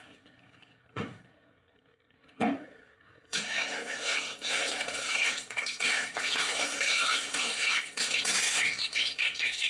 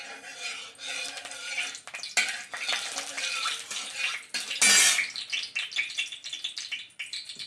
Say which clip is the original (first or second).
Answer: second